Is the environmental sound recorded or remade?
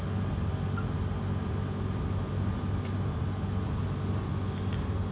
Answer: recorded